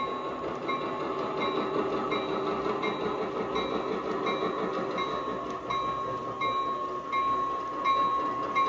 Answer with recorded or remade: recorded